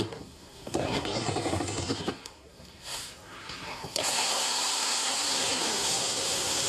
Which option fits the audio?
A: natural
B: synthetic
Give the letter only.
B